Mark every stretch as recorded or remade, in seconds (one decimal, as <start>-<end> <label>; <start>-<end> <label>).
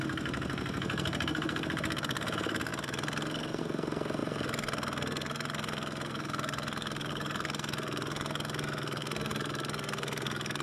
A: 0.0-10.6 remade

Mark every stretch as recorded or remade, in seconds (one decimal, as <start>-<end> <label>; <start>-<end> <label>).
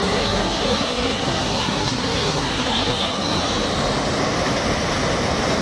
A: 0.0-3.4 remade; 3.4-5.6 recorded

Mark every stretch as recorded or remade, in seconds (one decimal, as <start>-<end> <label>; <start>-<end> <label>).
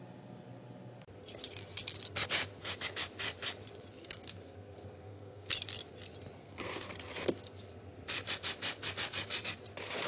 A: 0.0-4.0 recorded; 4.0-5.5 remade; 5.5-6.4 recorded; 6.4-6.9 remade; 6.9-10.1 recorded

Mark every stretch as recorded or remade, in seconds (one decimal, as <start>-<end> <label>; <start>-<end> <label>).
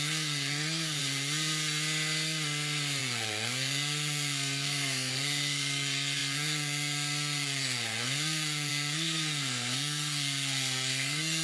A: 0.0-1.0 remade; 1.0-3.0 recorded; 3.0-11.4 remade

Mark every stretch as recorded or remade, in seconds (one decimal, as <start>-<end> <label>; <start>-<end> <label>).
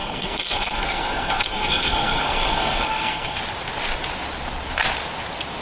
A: 0.0-3.4 remade; 3.4-5.6 recorded